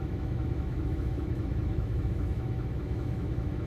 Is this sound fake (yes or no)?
yes